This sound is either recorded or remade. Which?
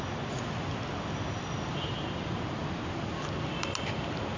recorded